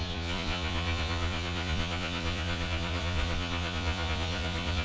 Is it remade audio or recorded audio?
remade